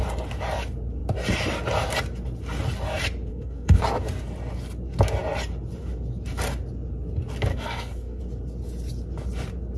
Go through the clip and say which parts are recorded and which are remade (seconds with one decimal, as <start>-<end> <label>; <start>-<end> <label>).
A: 0.0-3.3 recorded; 3.3-3.8 remade; 3.8-7.5 recorded; 7.5-8.2 remade; 8.2-9.8 recorded